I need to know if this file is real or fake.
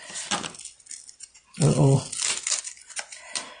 real